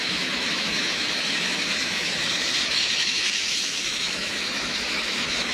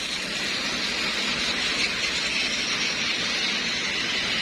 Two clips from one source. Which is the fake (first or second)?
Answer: first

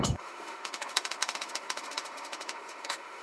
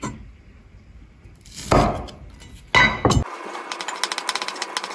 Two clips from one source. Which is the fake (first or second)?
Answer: first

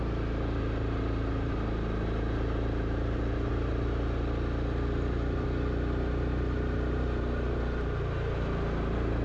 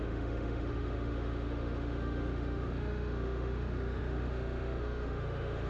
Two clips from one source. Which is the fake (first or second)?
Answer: second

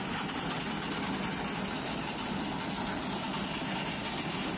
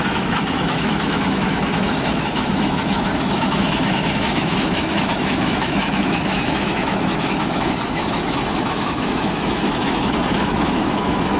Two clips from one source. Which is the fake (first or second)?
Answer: second